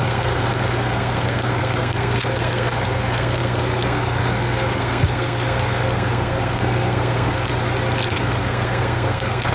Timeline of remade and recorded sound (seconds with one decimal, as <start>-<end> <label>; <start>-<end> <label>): 0.0-7.5 remade; 7.5-8.1 recorded; 8.1-9.5 remade